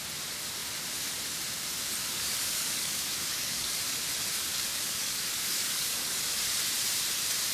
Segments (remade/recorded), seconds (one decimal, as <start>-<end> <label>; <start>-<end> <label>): 0.0-2.0 recorded; 2.0-3.8 remade; 3.8-4.5 recorded; 4.5-6.4 remade; 6.4-7.5 recorded